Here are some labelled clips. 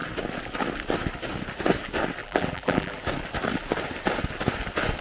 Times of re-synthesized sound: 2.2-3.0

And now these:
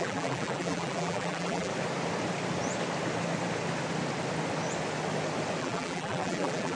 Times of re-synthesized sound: 0.0-1.7; 5.6-6.7

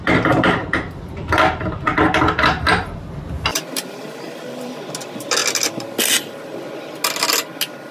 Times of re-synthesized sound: 3.5-4.8

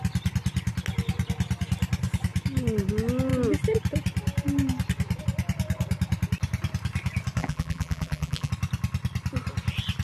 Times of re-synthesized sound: 7.4-8.5

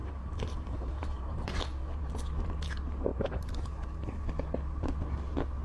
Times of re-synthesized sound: 0.0-2.0; 3.1-4.2

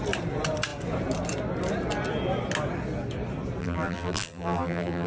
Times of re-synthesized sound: 3.6-5.1

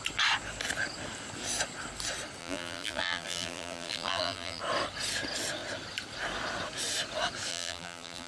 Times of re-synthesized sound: 2.4-4.6; 7.5-8.3